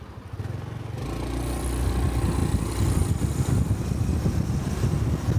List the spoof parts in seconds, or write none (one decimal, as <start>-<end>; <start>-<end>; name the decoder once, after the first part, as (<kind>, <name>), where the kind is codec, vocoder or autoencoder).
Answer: none